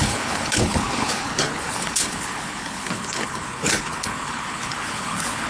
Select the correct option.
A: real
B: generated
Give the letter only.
B